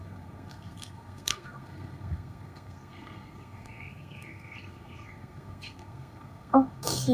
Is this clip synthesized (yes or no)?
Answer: yes